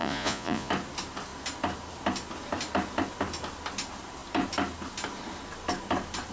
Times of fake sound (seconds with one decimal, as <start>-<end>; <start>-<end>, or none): 0.0-0.7